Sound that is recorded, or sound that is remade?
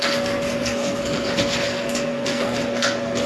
remade